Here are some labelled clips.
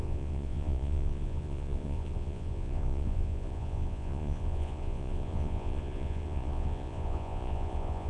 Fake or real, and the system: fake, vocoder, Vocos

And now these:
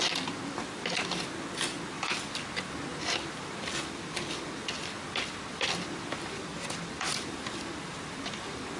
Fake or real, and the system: real